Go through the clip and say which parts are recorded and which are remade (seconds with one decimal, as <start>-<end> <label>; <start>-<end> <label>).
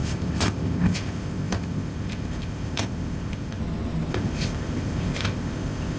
0.0-3.6 remade; 3.6-4.1 recorded; 4.1-6.0 remade